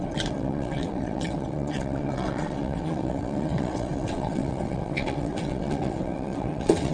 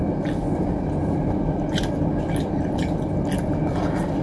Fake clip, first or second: first